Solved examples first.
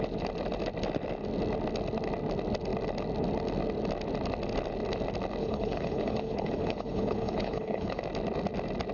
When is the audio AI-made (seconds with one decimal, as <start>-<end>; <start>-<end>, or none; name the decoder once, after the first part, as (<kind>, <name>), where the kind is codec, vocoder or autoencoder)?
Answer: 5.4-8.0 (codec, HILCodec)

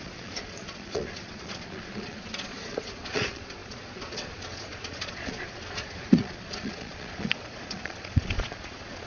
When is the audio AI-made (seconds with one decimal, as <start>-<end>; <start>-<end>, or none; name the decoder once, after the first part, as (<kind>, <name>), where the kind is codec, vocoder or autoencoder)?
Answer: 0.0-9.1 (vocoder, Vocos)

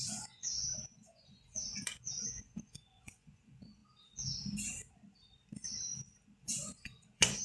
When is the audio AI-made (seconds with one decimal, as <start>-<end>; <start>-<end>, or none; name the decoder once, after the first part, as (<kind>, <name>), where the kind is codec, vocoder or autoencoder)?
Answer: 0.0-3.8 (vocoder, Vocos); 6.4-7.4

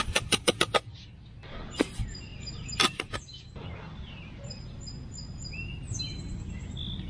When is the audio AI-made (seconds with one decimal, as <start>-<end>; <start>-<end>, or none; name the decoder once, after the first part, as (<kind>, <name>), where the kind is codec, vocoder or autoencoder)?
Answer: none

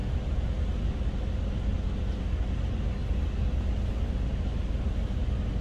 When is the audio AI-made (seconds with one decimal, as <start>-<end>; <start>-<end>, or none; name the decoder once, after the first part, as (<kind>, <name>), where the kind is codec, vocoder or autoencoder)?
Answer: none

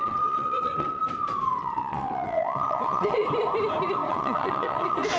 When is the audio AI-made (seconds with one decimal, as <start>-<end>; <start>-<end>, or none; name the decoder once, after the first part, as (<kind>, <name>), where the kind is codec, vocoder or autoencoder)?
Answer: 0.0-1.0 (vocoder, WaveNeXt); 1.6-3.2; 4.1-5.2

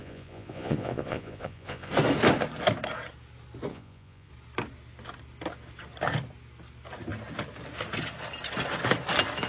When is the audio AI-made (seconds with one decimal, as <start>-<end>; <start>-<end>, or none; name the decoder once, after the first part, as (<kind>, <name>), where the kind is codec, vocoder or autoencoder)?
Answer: 0.0-1.9 (vocoder, Vocos); 3.7-4.3

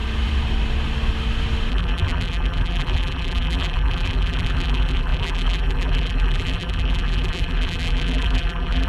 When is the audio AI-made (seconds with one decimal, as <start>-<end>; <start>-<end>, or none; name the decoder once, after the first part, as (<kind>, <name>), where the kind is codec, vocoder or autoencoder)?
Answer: 1.7-8.9 (vocoder, BigVGAN v2)